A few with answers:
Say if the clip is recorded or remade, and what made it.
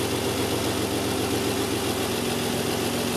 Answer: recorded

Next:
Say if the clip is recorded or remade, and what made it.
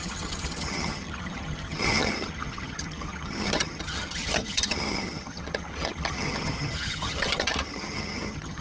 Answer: remade, vocoder, HiFi-GAN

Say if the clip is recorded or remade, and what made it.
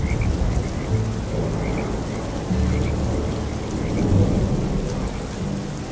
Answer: recorded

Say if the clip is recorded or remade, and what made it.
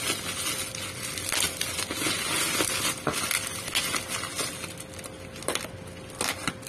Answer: recorded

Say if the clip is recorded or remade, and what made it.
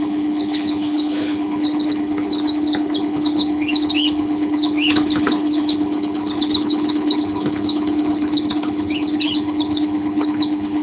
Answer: remade, codec, HILCodec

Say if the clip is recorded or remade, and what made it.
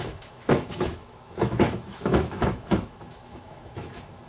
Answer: remade, autoencoder, DAC-VAE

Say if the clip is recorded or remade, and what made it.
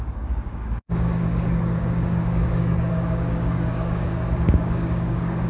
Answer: remade, codec, DAC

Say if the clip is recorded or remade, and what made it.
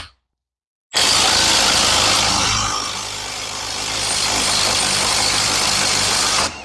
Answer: recorded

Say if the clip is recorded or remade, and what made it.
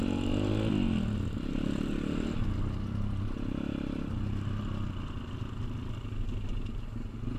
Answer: recorded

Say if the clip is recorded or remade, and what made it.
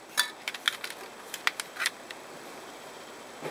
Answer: recorded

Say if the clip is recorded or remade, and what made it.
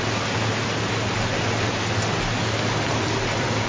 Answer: recorded